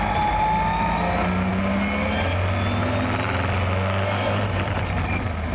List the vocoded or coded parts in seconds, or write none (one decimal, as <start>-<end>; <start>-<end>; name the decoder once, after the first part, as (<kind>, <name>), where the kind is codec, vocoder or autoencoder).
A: none